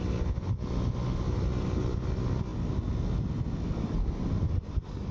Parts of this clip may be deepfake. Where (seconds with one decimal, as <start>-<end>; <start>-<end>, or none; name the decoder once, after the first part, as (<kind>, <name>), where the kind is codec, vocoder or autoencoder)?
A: none